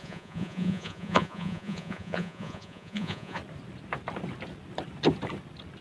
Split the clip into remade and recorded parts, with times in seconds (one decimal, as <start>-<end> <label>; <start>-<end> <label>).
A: 0.0-3.4 remade; 3.4-5.8 recorded